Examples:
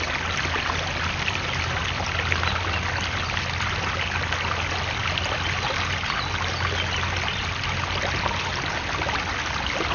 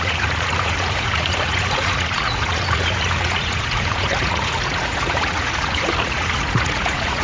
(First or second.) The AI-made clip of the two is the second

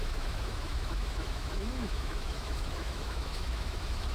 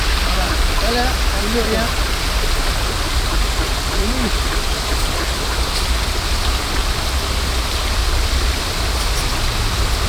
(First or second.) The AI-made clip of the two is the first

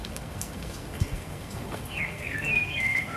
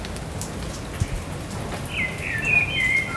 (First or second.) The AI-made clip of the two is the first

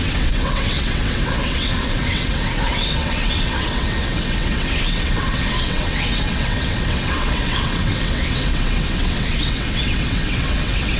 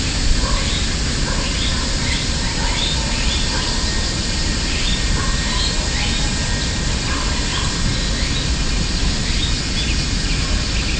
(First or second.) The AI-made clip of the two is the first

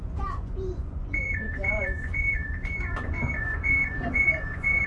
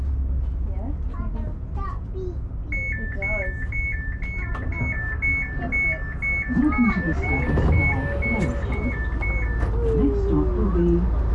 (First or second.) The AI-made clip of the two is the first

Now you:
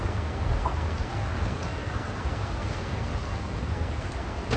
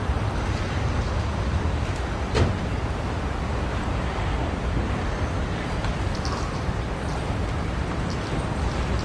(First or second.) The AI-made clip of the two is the first